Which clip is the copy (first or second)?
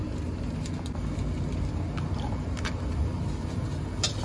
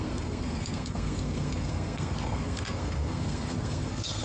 second